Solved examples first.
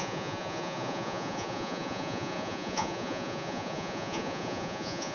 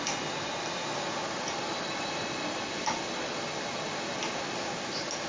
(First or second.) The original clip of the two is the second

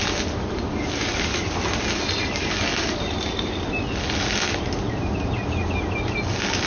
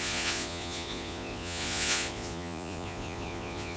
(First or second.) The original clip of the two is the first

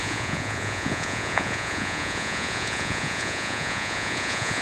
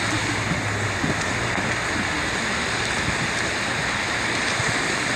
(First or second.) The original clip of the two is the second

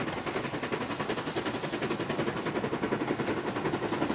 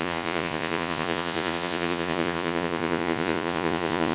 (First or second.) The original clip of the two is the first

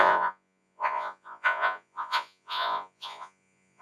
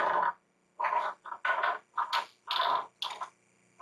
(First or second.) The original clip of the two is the second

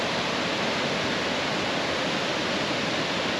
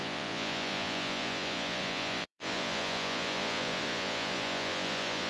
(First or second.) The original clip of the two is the first